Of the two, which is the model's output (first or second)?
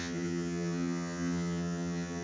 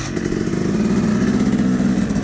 first